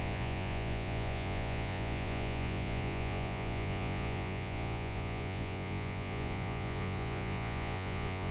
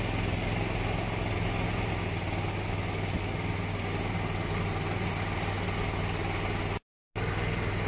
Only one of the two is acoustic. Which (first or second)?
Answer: second